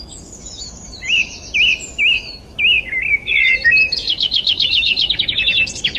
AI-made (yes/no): yes